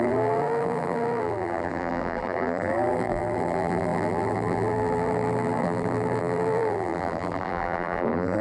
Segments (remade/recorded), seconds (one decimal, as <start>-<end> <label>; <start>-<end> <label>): 0.0-8.4 remade

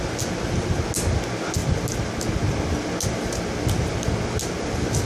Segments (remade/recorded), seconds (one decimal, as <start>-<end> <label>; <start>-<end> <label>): 0.0-5.0 recorded

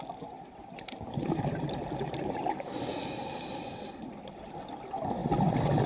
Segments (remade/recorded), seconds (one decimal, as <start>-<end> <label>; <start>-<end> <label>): 0.0-0.6 recorded; 0.6-4.1 remade; 4.1-5.9 recorded

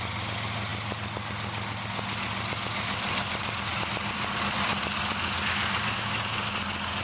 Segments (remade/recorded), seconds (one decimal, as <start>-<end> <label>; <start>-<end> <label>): 0.0-3.7 recorded; 3.7-6.0 remade; 6.0-7.0 recorded

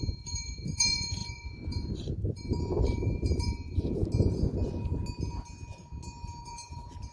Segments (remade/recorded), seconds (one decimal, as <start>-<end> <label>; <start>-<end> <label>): 0.0-4.0 remade; 4.0-6.4 recorded; 6.4-7.1 remade

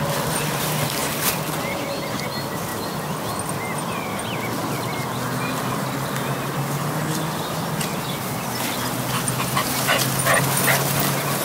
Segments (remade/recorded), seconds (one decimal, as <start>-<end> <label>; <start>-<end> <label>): 0.0-11.4 recorded